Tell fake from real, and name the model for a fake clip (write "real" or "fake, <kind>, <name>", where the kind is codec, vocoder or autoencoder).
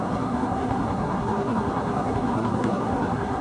fake, codec, SNAC